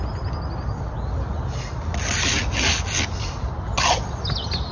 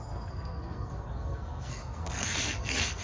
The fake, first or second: second